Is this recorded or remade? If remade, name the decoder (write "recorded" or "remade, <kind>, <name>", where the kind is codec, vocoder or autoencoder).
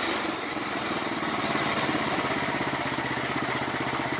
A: remade, vocoder, BigVGAN v2